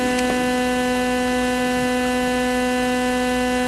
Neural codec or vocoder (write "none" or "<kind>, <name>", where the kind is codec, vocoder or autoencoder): none